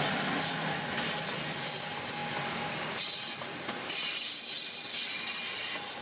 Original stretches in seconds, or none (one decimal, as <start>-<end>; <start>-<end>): 0.0-6.0